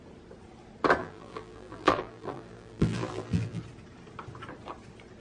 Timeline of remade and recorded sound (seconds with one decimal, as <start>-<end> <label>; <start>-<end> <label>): 0.0-1.0 recorded; 1.0-3.6 remade; 3.6-5.2 recorded